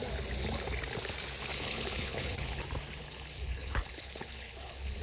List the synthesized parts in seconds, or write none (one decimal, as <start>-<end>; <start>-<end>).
1.5-2.6; 3.0-5.0